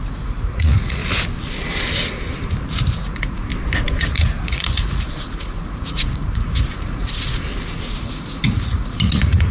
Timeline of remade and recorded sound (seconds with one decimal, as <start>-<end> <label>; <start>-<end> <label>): 0.0-1.0 remade; 1.0-3.0 recorded; 3.0-3.5 remade; 3.5-4.0 recorded; 4.0-7.5 remade; 7.5-8.0 recorded; 8.0-9.5 remade